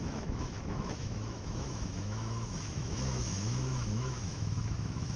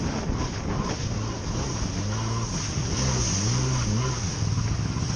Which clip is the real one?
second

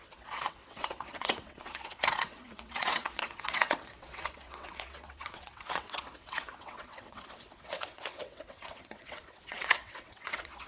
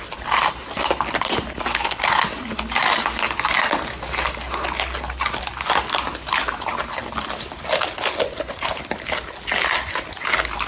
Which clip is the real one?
second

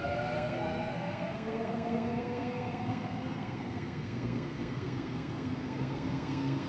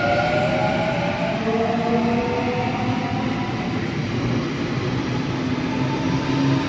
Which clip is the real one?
second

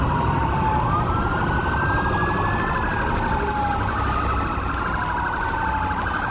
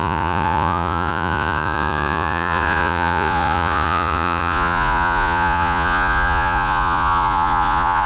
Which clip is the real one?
first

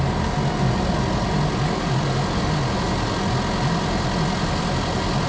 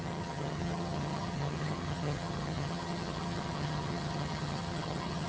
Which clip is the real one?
first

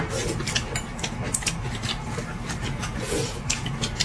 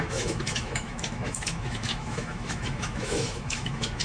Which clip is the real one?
first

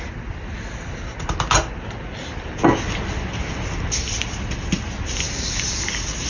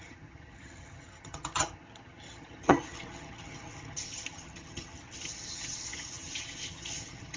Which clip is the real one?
first